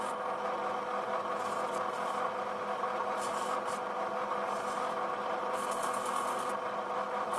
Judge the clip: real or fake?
real